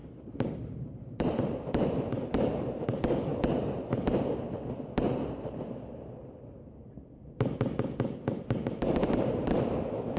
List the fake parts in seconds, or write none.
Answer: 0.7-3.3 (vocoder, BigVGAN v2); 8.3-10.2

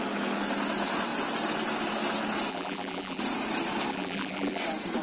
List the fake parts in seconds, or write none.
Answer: 2.5-3.2 (vocoder, BigVGAN v2); 3.9-4.6

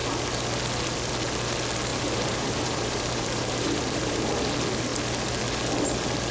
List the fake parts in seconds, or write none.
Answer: 1.9-4.3 (vocoder, BigVGAN v2)